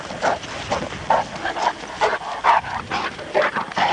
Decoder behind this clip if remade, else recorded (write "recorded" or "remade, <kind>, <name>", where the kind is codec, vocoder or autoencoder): recorded